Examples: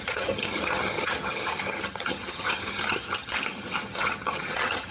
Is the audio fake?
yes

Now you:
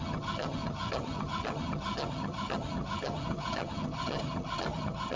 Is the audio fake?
yes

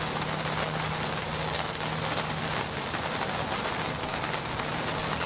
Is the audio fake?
no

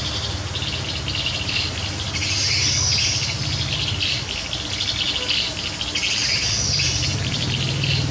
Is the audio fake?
no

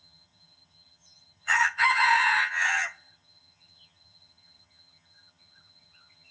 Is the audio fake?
yes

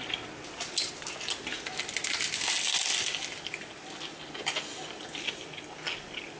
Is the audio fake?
no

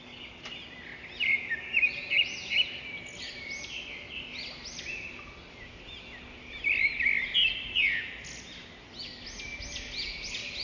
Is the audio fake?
no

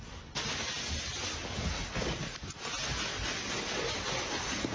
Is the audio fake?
no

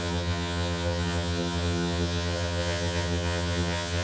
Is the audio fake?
yes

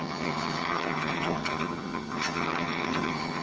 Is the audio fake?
yes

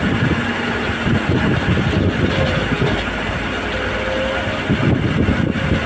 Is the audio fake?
no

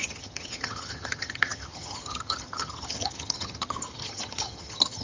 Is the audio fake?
yes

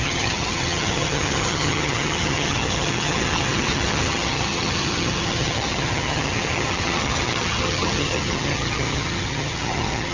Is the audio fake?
yes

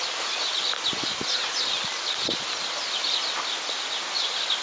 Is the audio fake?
no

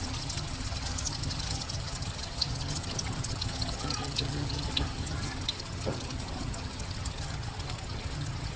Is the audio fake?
yes